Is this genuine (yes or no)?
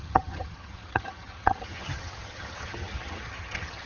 no